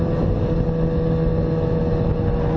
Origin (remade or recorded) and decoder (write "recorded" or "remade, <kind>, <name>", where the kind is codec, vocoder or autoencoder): recorded